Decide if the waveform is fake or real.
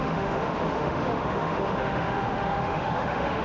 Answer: fake